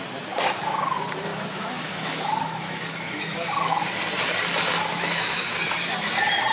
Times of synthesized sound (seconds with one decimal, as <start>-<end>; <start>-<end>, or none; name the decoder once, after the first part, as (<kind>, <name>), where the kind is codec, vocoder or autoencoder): 1.3-3.7 (autoencoder, DAC-VAE); 4.9-5.6